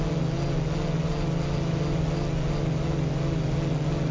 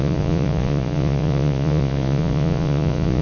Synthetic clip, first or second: second